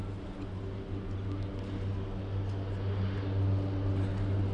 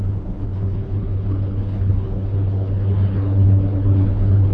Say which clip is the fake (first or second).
second